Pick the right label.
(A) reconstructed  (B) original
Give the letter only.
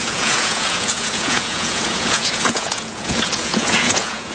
A